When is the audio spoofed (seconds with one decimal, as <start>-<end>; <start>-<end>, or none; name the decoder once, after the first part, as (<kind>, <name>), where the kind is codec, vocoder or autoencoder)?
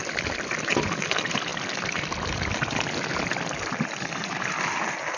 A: none